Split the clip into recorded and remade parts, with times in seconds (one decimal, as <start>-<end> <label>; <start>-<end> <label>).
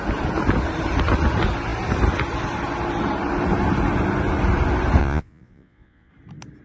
0.0-5.0 recorded; 5.0-6.1 remade; 6.1-6.6 recorded